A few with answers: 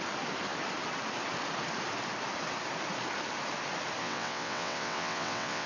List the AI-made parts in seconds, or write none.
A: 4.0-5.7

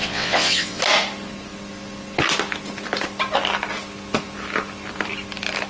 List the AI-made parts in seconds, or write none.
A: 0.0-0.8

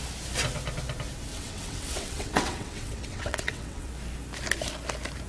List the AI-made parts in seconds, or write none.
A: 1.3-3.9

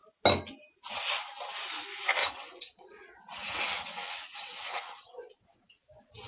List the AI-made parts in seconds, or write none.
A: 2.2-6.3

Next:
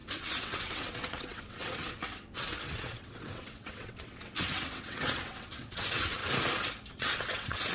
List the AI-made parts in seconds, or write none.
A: 0.0-6.2; 6.9-7.7

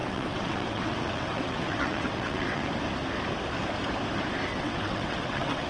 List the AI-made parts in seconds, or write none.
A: 0.0-2.7; 4.5-5.7

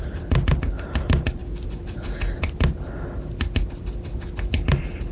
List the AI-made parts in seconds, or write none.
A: none